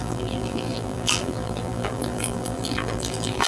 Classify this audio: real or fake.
fake